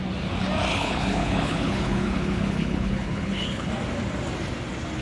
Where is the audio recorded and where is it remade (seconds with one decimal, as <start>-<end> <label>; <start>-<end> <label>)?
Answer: 0.0-0.7 recorded; 0.7-3.7 remade; 3.7-5.0 recorded

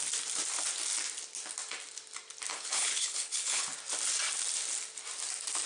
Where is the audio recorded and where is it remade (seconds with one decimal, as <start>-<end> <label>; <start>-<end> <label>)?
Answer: 0.0-2.5 recorded; 2.5-3.7 remade; 3.7-5.7 recorded

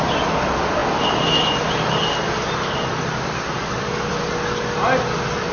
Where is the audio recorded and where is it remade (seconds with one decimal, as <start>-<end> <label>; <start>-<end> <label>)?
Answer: 0.0-5.5 recorded

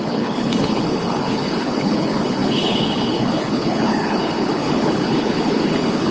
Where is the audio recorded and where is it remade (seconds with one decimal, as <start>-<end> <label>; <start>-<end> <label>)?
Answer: 0.0-6.1 remade

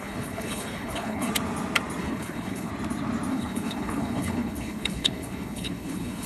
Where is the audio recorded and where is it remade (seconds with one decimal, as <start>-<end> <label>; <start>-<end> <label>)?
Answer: 0.0-1.3 remade; 1.3-2.0 recorded; 2.0-2.7 remade; 2.7-3.3 recorded; 3.3-6.3 remade

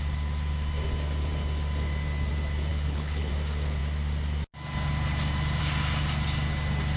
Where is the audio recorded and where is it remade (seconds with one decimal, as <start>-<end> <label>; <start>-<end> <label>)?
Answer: 0.0-2.7 recorded; 2.7-3.3 remade; 3.3-7.0 recorded

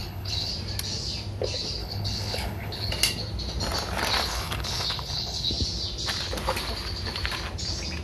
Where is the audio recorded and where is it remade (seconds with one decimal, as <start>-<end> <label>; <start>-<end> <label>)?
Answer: 0.0-0.5 remade; 0.5-1.8 recorded; 1.8-2.9 remade; 2.9-4.2 recorded; 4.2-5.5 remade; 5.5-8.0 recorded

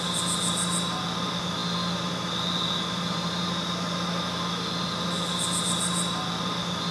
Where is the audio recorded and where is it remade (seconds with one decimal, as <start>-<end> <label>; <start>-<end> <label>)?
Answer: 0.0-6.9 recorded